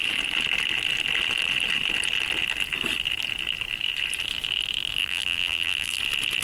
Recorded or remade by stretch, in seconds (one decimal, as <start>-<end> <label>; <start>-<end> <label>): 0.0-5.0 recorded; 5.0-6.0 remade; 6.0-6.4 recorded